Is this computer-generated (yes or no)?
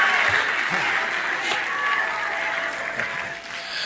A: no